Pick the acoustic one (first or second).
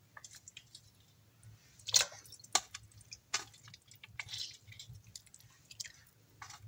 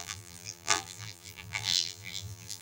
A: first